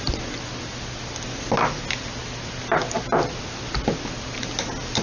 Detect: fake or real real